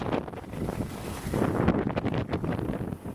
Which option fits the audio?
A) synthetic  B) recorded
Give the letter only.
B